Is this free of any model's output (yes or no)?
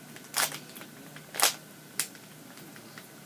yes